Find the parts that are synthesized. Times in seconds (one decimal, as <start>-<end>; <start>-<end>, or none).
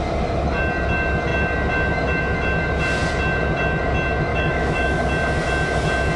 4.3-5.0